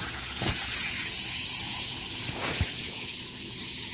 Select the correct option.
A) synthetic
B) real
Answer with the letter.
A